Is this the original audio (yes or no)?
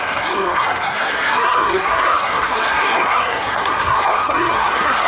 no